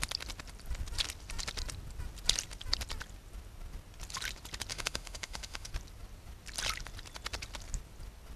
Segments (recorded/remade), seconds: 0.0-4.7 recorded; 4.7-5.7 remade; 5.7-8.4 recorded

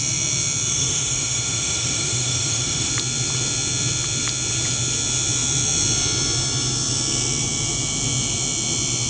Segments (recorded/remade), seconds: 0.0-0.7 recorded; 0.7-2.9 remade; 2.9-9.1 recorded

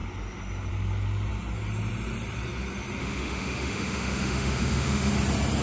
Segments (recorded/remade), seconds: 0.0-3.0 recorded; 3.0-5.1 remade; 5.1-5.6 recorded

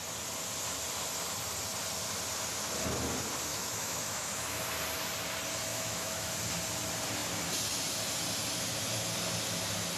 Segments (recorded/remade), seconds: 0.0-3.5 recorded; 3.5-4.6 remade; 4.6-5.7 recorded; 5.7-6.3 remade; 6.3-10.0 recorded

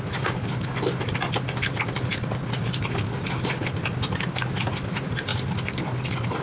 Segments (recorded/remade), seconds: 0.0-6.4 recorded